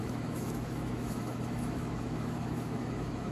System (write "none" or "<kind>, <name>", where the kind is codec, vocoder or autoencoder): autoencoder, DAC-VAE